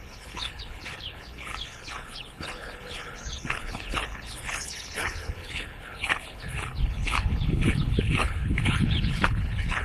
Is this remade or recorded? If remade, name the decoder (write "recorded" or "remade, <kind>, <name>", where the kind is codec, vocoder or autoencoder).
remade, codec, HILCodec